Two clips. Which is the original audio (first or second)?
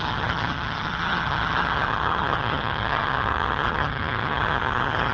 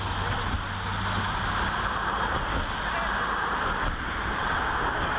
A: second